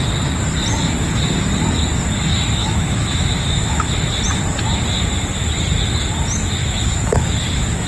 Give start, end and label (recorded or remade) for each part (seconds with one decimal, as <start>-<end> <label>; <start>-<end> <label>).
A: 0.0-2.6 recorded; 2.6-3.9 remade; 3.9-6.6 recorded; 6.6-7.9 remade